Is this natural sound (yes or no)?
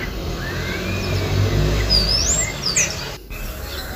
yes